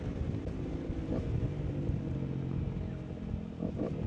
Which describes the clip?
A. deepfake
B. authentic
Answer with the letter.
B